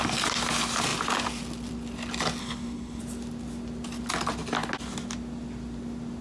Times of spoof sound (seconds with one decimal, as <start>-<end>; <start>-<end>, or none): 2.4-3.0